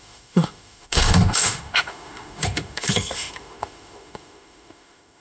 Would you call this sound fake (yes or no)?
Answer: yes